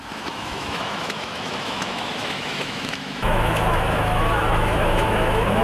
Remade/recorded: remade